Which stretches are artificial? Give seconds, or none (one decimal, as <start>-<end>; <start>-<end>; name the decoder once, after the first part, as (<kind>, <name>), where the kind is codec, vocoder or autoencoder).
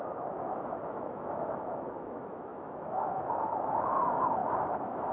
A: 0.0-5.1 (autoencoder, DAC-VAE)